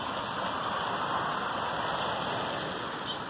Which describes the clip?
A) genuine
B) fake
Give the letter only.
A